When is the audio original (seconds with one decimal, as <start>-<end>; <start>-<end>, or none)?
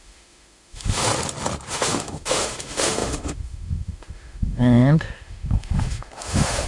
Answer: 1.1-1.7